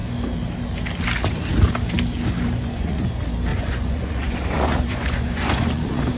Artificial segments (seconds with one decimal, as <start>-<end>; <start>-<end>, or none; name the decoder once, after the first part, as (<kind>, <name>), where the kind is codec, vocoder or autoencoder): 2.6-3.1 (vocoder, Vocos); 3.5-6.2